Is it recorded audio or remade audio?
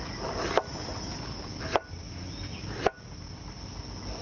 recorded